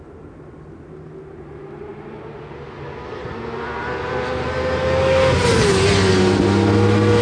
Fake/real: real